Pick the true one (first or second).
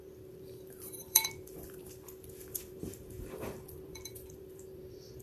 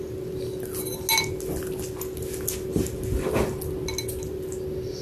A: second